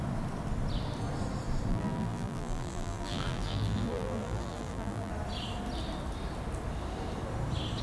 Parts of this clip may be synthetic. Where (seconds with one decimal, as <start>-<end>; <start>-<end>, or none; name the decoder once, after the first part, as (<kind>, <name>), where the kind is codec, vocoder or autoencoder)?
1.7-5.1 (vocoder, BigVGAN v2)